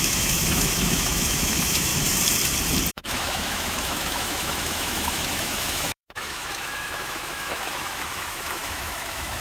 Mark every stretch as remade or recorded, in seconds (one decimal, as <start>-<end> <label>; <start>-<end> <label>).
0.0-1.9 remade; 1.9-2.9 recorded; 2.9-9.4 remade